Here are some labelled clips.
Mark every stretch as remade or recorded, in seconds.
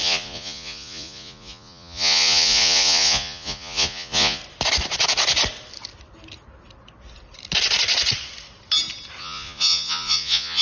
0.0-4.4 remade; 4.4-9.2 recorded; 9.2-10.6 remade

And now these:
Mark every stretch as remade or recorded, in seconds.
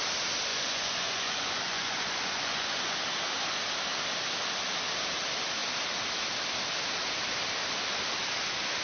0.0-0.5 recorded; 0.5-3.0 remade; 3.0-8.8 recorded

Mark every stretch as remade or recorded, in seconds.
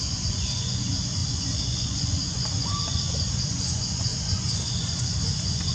0.0-5.7 remade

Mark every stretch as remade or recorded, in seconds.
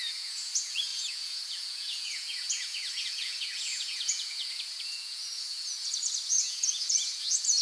0.0-7.6 remade